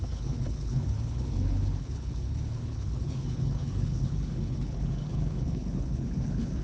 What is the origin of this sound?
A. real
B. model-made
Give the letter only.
B